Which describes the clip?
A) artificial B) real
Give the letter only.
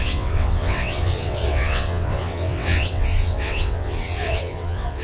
A